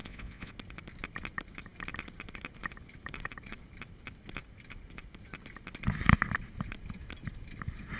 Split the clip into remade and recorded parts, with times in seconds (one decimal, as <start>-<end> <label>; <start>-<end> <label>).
0.0-0.5 remade; 0.5-8.0 recorded